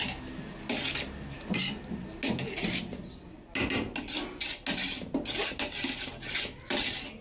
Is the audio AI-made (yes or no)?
no